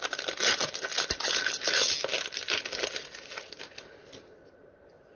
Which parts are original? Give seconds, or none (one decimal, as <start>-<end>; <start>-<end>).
0.0-5.2